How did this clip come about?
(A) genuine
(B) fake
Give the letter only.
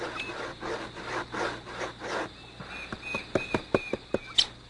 A